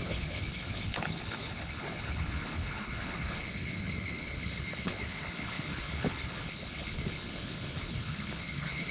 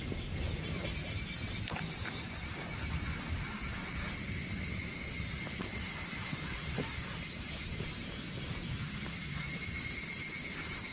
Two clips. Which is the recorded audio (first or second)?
second